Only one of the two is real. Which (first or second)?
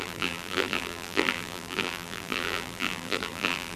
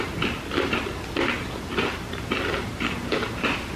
second